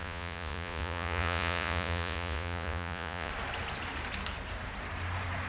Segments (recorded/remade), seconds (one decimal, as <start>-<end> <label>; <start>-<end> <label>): 0.0-3.3 remade; 3.3-5.5 recorded